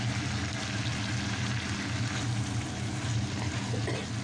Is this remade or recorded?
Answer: recorded